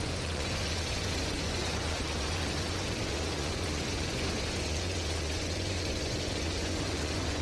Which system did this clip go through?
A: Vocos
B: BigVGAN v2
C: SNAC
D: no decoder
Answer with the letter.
A